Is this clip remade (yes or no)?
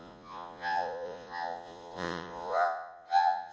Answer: yes